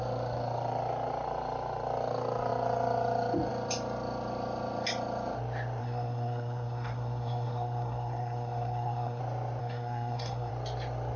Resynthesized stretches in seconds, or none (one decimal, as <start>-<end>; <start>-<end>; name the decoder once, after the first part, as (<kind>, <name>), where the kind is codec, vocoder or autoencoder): 5.8-9.2 (codec, SNAC); 9.6-10.5